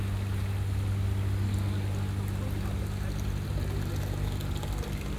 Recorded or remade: recorded